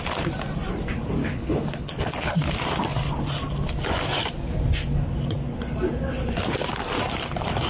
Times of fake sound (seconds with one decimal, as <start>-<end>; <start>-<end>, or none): 1.2-2.3